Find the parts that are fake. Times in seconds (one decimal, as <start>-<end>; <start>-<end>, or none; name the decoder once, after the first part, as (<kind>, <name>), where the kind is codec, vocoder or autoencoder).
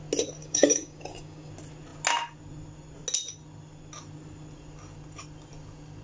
0.4-1.5 (codec, DAC)